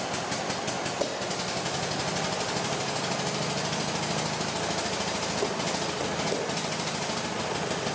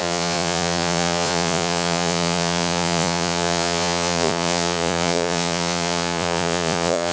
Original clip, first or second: first